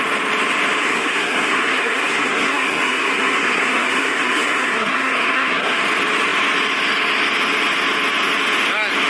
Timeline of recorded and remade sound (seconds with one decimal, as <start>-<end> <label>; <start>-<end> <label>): 0.0-0.8 recorded; 0.8-5.8 remade; 5.8-9.1 recorded